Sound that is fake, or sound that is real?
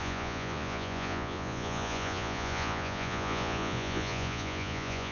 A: fake